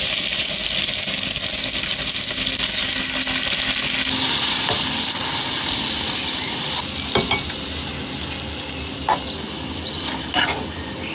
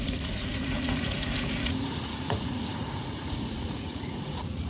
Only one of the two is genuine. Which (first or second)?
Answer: first